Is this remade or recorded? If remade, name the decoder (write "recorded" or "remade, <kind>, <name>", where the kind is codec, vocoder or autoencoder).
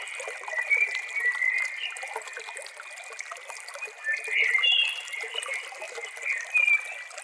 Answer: recorded